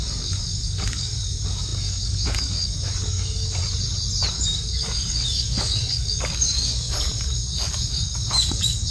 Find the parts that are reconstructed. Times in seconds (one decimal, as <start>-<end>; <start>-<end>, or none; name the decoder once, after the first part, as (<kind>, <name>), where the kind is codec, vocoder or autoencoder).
0.0-3.6 (codec, DAC); 4.3-8.9